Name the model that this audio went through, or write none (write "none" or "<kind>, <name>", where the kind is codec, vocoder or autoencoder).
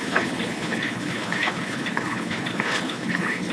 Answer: codec, HILCodec